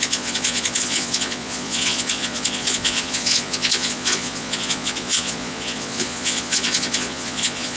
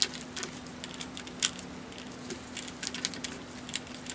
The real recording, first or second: second